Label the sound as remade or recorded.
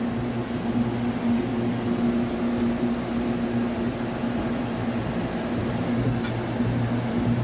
recorded